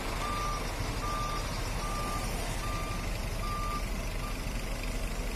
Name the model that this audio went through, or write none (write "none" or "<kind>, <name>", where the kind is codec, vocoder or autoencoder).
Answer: none